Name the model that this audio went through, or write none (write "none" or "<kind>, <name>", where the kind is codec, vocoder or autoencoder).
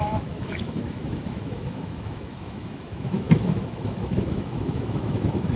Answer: autoencoder, DAC-VAE